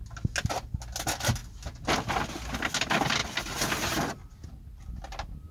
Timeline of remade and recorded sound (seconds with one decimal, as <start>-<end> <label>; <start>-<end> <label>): 0.0-5.5 recorded